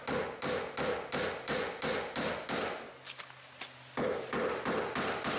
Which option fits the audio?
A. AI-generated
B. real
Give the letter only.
B